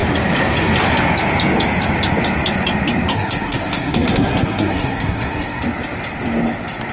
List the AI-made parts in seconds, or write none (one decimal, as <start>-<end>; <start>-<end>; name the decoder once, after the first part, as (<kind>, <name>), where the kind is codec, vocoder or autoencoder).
3.1-5.6 (codec, SNAC)